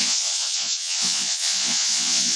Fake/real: fake